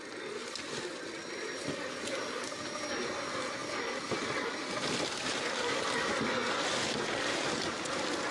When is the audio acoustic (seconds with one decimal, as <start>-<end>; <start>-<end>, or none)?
0.0-3.6; 5.6-8.3